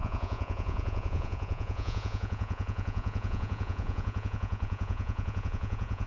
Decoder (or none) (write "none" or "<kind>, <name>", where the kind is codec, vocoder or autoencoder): vocoder, Vocos